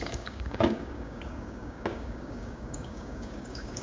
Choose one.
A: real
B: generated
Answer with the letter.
B